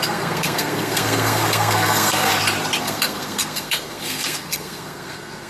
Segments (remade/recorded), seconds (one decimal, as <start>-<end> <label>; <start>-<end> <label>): 0.0-2.3 remade; 2.3-2.8 recorded; 2.8-5.5 remade